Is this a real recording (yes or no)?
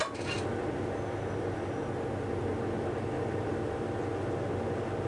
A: yes